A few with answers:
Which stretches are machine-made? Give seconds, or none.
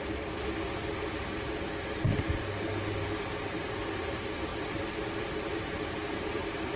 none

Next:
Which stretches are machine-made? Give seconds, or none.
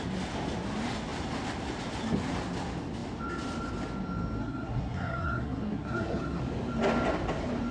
4.4-6.4 (codec, SNAC)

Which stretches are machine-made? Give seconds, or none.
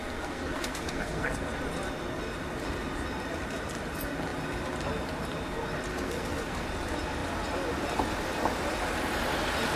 0.0-1.5 (codec, SNAC); 5.9-6.7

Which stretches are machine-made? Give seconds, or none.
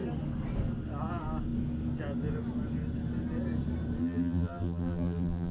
4.0-5.5 (vocoder, BigVGAN v2)